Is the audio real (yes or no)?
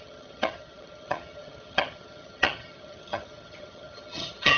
no